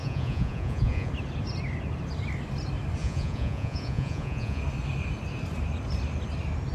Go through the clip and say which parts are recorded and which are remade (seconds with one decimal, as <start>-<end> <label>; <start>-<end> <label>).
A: 0.0-1.1 remade; 1.1-3.0 recorded; 3.0-4.6 remade; 4.6-6.7 recorded